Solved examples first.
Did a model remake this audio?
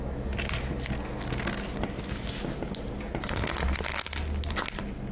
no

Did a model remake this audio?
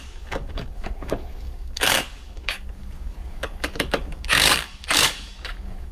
yes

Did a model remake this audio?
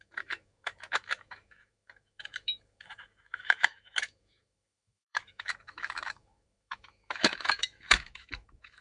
yes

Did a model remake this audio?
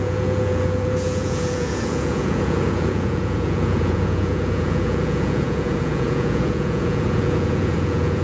yes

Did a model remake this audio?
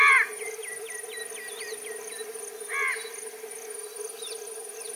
no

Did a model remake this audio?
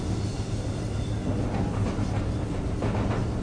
no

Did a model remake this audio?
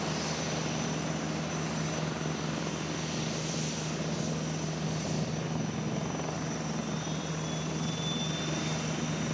no